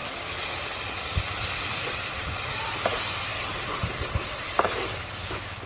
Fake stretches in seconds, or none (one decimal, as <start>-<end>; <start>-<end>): none